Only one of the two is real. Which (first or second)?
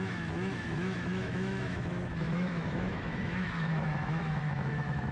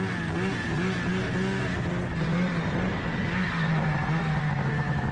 second